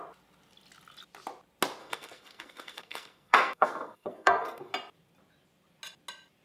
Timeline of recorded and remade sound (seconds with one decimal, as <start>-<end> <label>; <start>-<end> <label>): 0.0-1.8 recorded; 1.8-4.7 remade; 4.7-6.4 recorded